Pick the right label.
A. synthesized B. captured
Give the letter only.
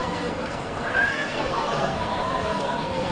A